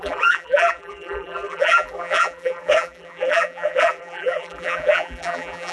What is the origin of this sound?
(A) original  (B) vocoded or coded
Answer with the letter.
B